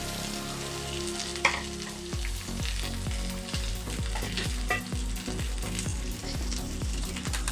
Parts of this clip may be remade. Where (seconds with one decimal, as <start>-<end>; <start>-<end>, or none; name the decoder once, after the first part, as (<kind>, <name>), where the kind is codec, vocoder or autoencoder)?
5.9-7.1 (vocoder, BigVGAN v2)